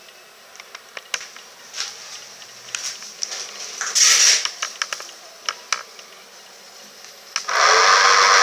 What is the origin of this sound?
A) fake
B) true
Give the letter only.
B